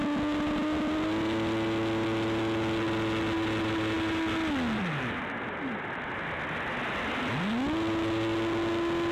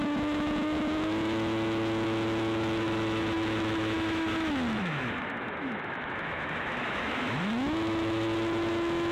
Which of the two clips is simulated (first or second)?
second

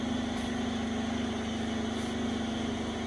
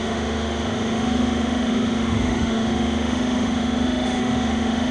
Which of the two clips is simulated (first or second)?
second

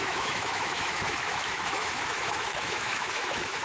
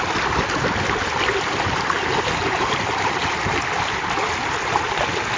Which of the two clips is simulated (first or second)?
first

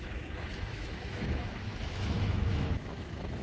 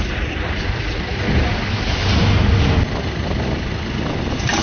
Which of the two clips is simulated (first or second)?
first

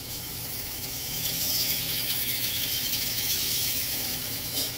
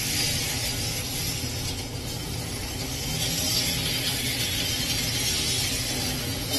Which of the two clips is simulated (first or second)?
first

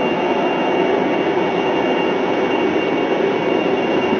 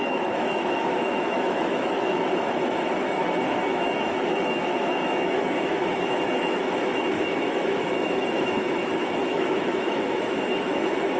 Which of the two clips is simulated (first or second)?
second